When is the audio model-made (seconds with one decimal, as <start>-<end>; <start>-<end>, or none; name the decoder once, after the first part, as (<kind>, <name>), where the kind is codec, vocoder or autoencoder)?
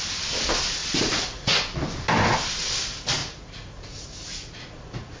0.8-1.6 (vocoder, Vocos); 3.2-5.2